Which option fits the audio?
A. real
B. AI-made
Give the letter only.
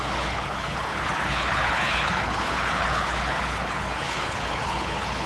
B